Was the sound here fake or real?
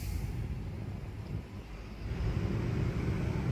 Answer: real